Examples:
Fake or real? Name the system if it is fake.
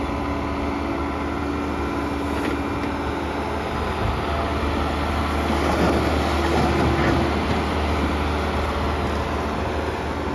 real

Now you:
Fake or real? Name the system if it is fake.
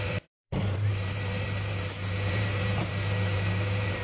fake, vocoder, BigVGAN v2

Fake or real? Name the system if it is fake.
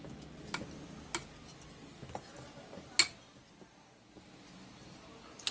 real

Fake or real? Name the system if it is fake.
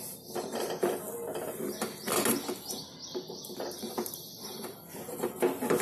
real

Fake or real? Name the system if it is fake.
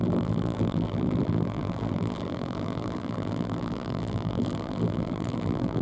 fake, vocoder, BigVGAN v2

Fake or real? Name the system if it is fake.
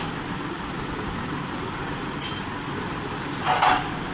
real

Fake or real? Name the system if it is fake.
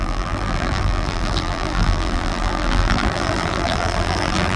fake, vocoder, BigVGAN v2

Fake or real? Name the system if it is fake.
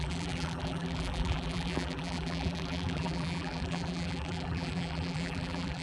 fake, vocoder, BigVGAN v2